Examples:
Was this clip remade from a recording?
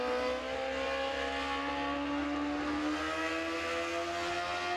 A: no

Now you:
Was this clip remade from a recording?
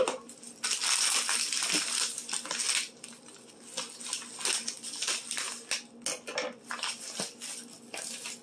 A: no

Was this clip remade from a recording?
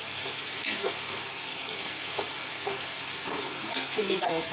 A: yes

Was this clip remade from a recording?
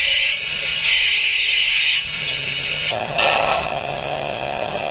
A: yes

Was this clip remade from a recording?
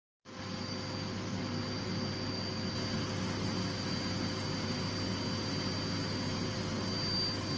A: no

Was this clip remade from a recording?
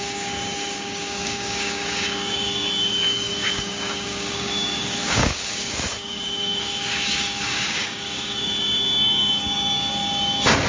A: yes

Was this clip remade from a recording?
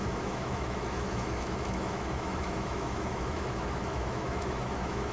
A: yes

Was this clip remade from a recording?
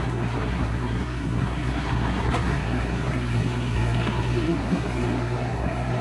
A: yes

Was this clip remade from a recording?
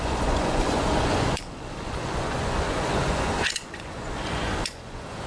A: yes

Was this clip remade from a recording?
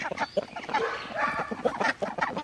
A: no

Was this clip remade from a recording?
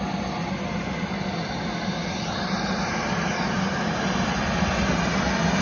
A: no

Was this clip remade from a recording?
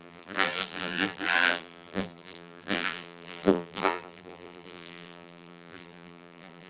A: yes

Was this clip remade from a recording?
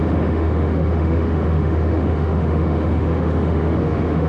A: yes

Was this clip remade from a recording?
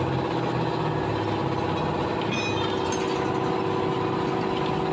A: no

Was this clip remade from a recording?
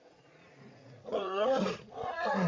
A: yes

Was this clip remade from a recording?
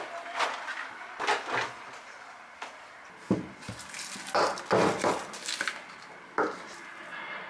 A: no